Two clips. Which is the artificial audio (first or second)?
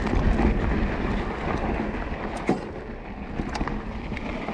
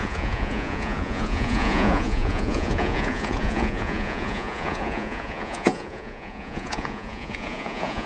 second